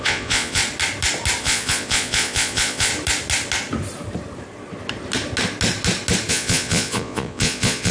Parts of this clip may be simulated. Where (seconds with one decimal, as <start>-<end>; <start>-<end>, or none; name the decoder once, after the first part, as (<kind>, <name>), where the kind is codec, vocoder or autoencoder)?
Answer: 0.0-0.6 (vocoder, Vocos); 1.4-2.9; 6.3-7.9